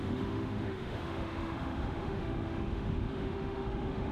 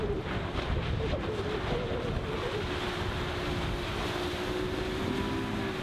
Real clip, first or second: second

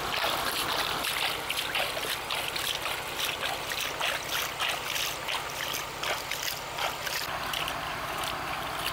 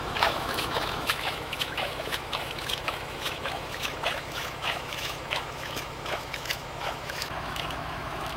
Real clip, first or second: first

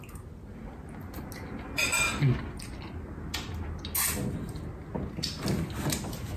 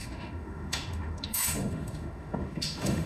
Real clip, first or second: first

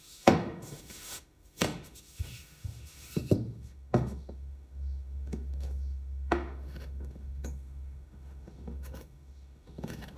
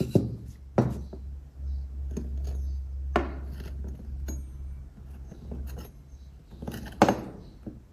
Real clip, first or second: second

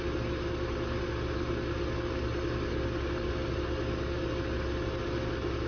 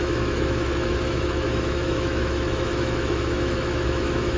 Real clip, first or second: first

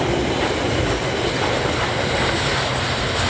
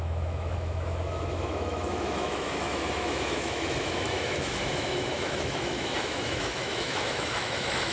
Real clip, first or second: first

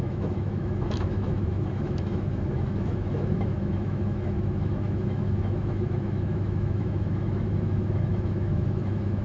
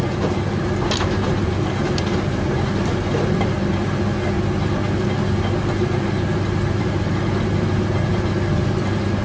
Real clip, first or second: second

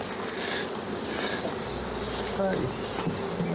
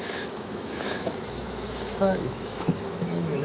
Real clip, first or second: first